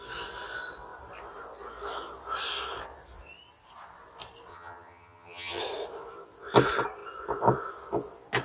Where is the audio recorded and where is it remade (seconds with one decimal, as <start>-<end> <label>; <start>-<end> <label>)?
0.0-4.5 recorded; 4.5-5.6 remade; 5.6-8.4 recorded